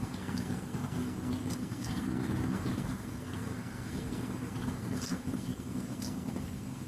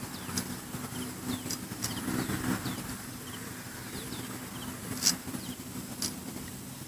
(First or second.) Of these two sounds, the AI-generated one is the first